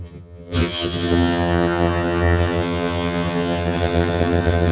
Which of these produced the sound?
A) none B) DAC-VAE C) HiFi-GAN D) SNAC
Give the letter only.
C